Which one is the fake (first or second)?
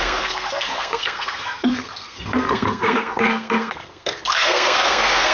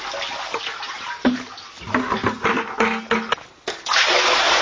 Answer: first